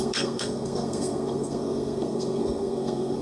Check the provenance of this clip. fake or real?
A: fake